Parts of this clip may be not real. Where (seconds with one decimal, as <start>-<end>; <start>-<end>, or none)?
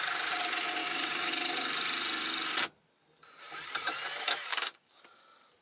0.8-1.3; 4.5-5.0